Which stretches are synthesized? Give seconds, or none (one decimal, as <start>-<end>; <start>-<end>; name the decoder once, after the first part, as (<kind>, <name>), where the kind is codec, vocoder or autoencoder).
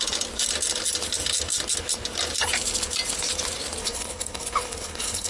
3.8-5.3 (codec, HILCodec)